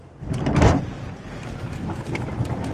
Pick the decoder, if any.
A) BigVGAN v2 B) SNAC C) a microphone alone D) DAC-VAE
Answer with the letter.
C